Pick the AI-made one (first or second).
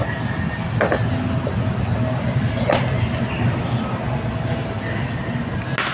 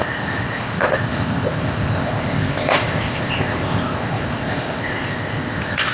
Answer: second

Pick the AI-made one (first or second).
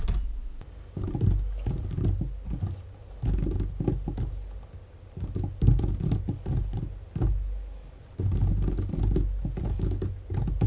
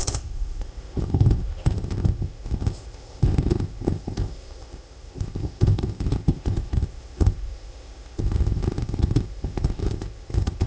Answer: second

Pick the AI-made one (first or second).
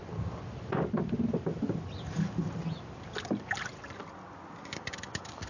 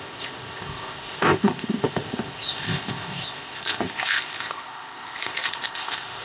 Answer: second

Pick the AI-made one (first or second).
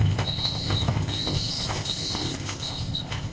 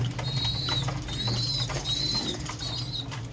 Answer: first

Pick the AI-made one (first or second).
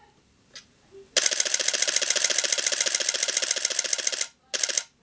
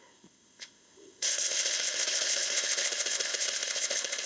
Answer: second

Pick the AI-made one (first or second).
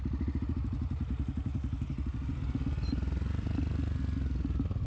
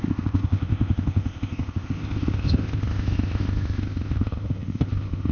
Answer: second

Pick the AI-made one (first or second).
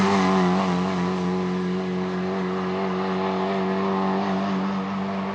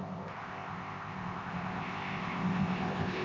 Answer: second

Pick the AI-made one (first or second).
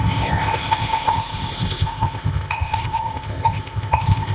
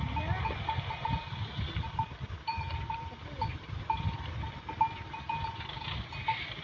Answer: first